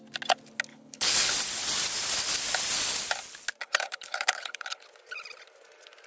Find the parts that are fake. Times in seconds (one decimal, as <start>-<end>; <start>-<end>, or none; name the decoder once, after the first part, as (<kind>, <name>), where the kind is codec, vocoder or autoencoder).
0.7-1.3 (codec, HILCodec); 3.6-4.8